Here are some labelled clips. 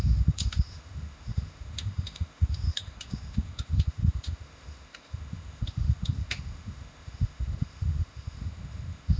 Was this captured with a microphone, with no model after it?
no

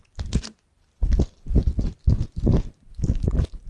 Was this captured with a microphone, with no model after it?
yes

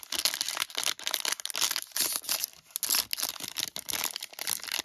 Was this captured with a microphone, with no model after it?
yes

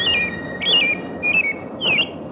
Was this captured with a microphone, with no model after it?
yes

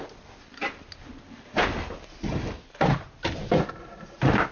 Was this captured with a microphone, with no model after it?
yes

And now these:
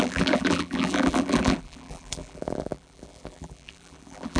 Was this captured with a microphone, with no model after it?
no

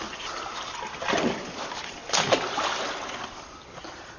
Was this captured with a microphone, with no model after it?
yes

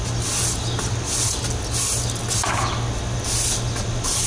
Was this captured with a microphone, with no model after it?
yes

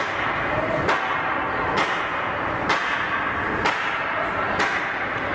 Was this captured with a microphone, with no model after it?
yes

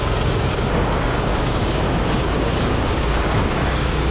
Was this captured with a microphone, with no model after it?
no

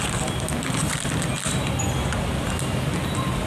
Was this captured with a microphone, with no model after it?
yes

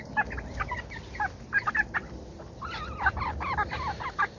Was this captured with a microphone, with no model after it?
yes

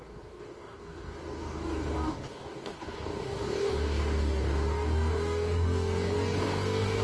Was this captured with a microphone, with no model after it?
no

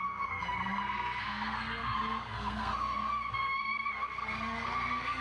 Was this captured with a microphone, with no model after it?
no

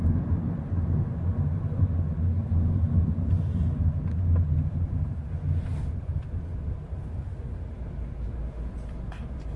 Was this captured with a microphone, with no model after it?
yes